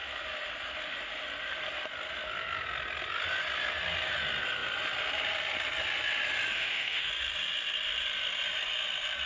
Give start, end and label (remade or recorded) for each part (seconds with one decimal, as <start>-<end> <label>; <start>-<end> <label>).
0.0-6.5 recorded; 6.5-7.1 remade; 7.1-9.3 recorded